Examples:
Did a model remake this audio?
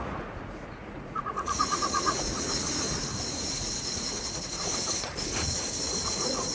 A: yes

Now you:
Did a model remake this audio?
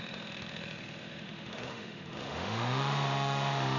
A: yes